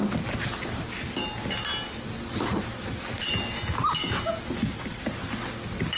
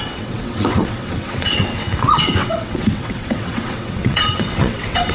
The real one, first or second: first